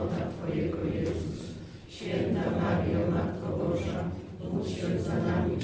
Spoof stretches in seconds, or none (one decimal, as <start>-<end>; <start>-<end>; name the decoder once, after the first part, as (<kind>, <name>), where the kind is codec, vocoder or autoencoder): 0.8-2.0 (vocoder, BigVGAN v2)